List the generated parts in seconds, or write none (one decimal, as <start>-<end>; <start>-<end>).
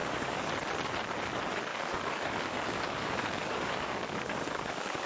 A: 0.0-0.5; 1.7-5.1